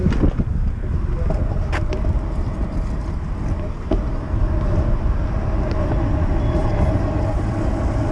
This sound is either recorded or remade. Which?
recorded